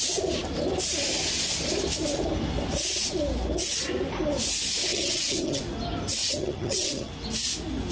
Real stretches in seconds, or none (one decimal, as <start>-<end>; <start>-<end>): 0.0-4.9; 5.6-6.2; 7.1-7.9